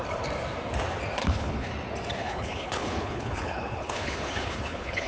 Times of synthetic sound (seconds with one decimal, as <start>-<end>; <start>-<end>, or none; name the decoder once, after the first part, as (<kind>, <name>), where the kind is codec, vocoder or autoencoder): 1.2-1.7 (codec, HILCodec); 2.2-5.1

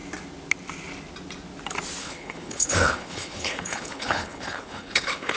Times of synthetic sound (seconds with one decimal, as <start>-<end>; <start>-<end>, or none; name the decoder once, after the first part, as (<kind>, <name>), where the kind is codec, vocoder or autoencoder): 2.0-5.4 (codec, HILCodec)

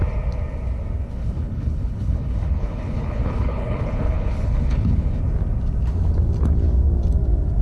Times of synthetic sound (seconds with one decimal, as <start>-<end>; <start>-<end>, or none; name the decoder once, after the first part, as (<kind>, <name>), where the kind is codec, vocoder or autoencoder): 1.1-5.2 (codec, HILCodec)

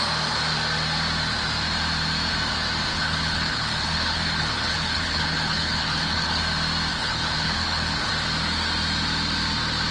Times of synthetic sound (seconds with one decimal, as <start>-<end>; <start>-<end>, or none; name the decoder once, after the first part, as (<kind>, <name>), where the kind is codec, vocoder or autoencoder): 2.9-6.4 (codec, HILCodec); 6.9-8.1

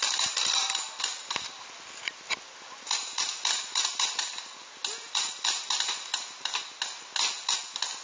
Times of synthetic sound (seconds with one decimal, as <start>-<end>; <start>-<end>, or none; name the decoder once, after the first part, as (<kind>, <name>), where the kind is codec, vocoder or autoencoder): none

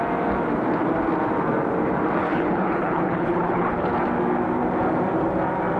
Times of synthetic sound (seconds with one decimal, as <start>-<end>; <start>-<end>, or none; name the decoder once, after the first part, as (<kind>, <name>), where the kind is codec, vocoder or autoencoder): 2.2-3.9 (codec, HILCodec)

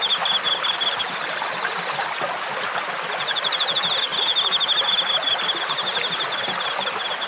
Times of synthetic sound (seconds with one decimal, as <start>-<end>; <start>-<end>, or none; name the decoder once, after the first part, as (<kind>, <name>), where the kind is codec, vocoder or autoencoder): none